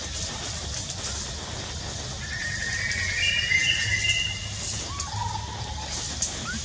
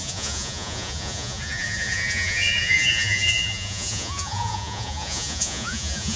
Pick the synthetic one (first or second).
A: second